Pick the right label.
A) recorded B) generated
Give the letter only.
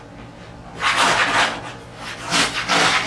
A